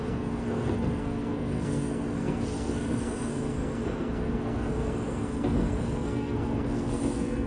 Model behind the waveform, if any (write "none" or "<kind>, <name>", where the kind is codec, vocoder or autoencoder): codec, SNAC